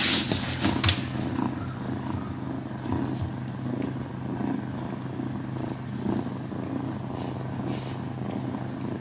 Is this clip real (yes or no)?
yes